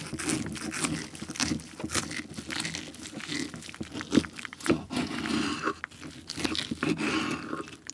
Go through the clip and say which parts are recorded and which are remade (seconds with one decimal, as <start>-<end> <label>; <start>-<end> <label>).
0.0-4.5 recorded; 4.5-5.2 remade; 5.2-7.9 recorded